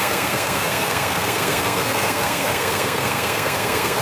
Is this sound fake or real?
fake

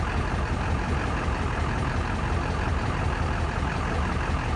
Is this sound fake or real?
fake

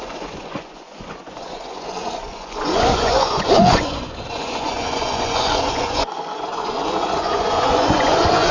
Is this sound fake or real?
fake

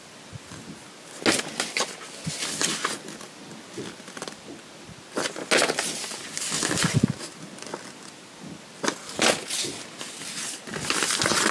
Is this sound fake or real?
real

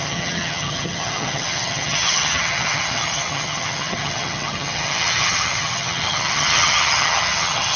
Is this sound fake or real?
fake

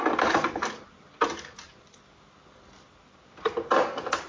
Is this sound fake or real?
real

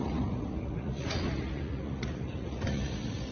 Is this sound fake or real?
fake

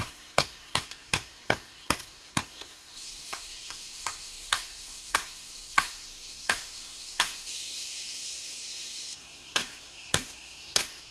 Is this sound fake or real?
fake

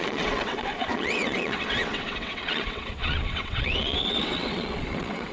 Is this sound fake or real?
fake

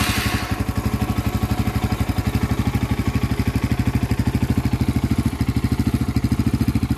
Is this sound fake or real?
real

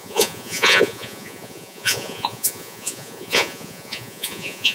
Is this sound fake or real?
fake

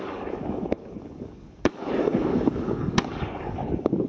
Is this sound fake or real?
fake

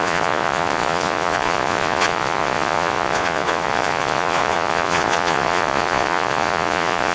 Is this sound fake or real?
fake